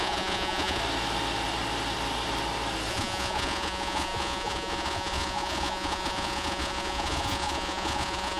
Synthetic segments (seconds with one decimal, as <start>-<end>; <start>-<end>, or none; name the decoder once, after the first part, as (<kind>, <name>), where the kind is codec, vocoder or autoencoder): 0.0-0.8 (vocoder, Vocos); 2.9-8.4